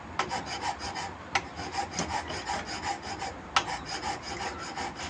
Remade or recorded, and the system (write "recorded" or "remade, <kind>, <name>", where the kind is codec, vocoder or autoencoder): recorded